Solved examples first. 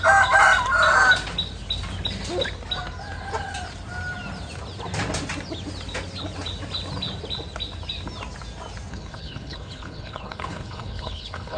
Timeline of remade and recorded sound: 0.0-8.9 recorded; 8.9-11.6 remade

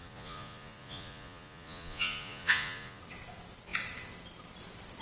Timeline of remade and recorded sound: 0.0-3.0 remade; 3.0-5.0 recorded